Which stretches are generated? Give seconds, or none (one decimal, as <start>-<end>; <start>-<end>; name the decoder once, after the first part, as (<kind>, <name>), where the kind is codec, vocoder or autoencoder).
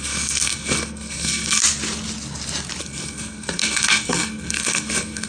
0.0-1.6 (codec, SNAC); 2.8-5.3